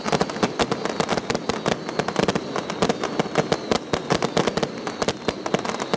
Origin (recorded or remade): recorded